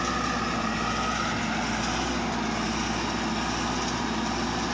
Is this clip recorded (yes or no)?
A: yes